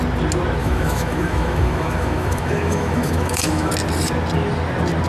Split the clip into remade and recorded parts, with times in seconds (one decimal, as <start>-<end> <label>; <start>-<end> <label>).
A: 0.0-0.6 recorded; 0.6-3.7 remade; 3.7-5.1 recorded